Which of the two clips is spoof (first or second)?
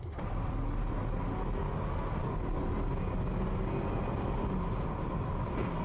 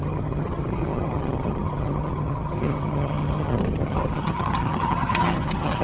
second